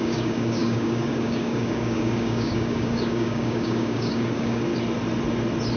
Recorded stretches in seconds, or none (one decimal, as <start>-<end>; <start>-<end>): 4.7-5.8